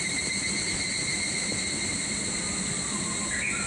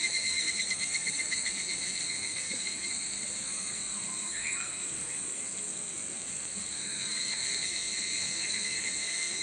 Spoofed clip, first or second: second